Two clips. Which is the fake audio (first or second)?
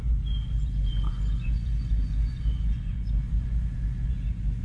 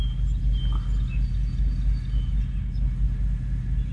first